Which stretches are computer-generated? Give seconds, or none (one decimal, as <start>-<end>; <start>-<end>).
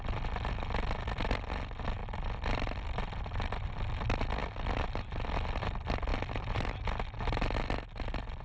2.0-3.7; 4.4-5.1; 6.1-6.7